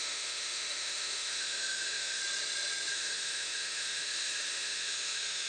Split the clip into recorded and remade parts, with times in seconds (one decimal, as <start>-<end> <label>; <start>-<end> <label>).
0.0-2.2 remade; 2.2-2.9 recorded; 2.9-5.5 remade